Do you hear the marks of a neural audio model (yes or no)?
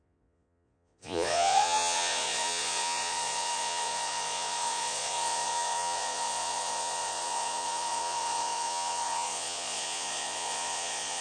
yes